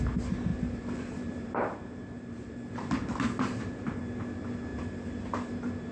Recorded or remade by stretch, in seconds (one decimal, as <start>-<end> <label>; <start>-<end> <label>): 0.0-0.5 recorded; 0.5-2.9 remade; 2.9-3.5 recorded; 3.5-4.0 remade; 4.0-5.9 recorded